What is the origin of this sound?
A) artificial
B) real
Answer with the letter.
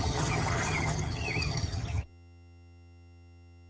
A